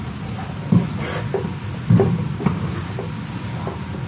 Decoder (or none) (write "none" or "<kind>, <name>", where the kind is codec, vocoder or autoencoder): none